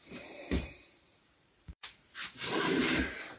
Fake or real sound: fake